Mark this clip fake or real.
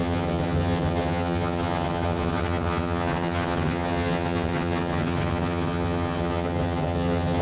fake